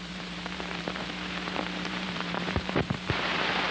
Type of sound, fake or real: fake